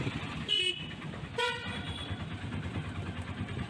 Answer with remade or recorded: recorded